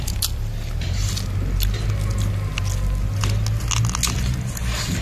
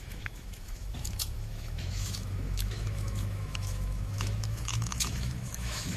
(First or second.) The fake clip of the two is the second